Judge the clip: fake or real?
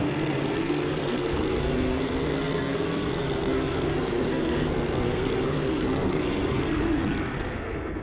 fake